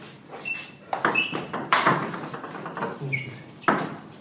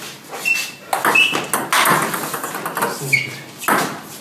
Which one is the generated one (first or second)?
first